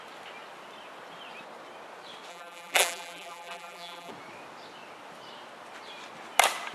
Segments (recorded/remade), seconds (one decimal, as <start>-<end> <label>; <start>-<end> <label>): 0.0-2.3 recorded; 2.3-4.1 remade; 4.1-6.7 recorded